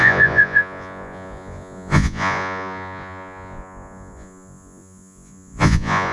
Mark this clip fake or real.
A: fake